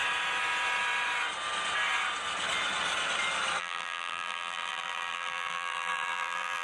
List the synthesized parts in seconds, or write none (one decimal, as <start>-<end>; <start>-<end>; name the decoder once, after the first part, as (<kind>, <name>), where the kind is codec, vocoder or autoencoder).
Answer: 3.6-6.6 (vocoder, BigVGAN v2)